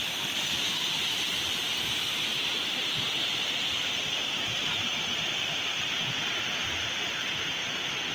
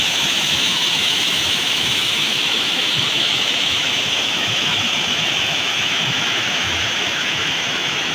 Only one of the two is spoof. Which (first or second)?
second